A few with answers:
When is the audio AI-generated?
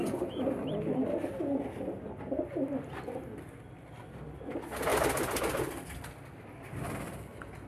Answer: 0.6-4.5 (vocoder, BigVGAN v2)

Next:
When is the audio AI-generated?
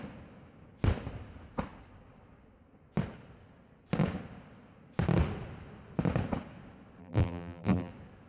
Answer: 7.0-7.9 (vocoder, BigVGAN v2)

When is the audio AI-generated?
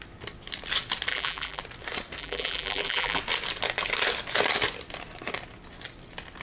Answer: 1.1-1.6 (vocoder, BigVGAN v2); 2.2-3.2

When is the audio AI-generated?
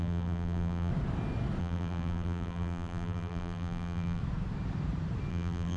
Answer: 0.0-0.9 (vocoder, BigVGAN v2); 1.6-4.2; 5.3-5.8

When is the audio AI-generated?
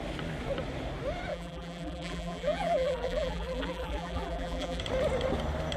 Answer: 1.3-4.8 (vocoder, BigVGAN v2)